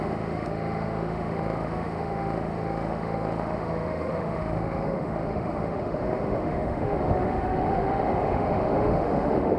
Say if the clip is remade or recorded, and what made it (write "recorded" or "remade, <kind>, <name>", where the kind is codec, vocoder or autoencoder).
remade, autoencoder, DAC-VAE